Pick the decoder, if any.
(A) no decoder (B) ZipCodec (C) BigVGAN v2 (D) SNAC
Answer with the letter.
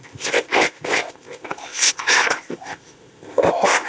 B